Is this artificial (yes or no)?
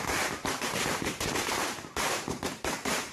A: yes